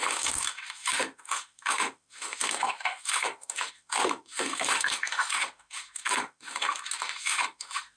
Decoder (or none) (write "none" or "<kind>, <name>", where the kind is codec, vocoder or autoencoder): autoencoder, DAC-VAE